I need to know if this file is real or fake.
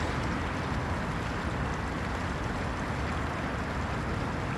real